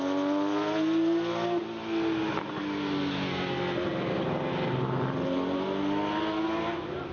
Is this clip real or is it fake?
real